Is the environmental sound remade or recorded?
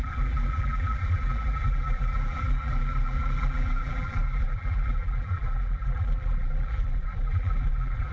remade